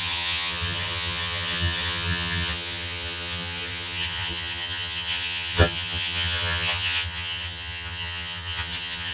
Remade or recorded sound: remade